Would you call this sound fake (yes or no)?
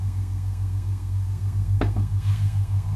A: yes